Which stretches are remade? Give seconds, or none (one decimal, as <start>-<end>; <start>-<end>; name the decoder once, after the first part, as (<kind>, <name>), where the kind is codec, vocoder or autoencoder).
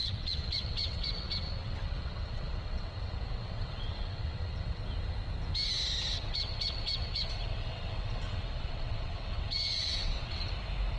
0.0-4.8 (vocoder, WaveNeXt); 6.1-10.5